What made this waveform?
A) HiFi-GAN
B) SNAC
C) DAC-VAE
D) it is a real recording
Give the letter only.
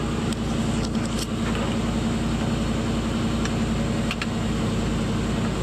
D